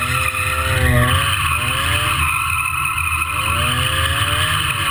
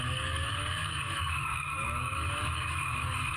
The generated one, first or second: second